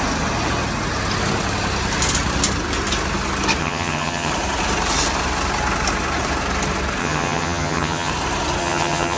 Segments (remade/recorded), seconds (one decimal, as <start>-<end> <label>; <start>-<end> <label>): 0.0-3.6 recorded; 3.6-4.3 remade; 4.3-7.0 recorded; 7.0-8.1 remade; 8.1-8.6 recorded; 8.6-9.2 remade